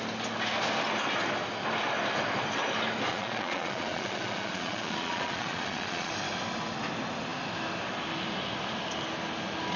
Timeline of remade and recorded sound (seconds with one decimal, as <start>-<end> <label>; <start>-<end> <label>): 0.0-3.1 recorded; 3.1-6.1 remade; 6.1-9.8 recorded